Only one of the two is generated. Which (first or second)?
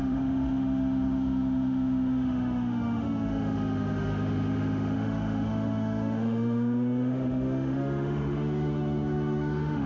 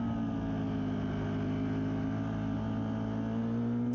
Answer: first